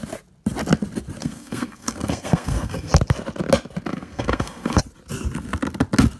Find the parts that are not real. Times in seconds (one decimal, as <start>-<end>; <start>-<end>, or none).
1.2-2.9; 3.9-4.8